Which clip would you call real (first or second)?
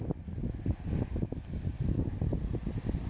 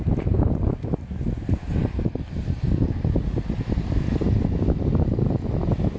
second